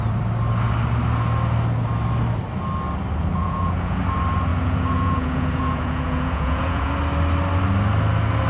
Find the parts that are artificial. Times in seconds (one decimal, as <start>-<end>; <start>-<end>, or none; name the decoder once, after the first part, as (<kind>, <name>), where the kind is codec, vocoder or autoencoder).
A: 3.4-4.0 (vocoder, Vocos); 4.5-6.9